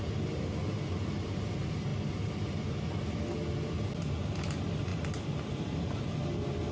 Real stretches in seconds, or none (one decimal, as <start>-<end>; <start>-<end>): 0.0-6.7